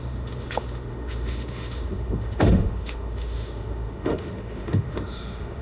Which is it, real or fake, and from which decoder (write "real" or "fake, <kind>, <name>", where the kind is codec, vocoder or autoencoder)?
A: fake, autoencoder, DAC-VAE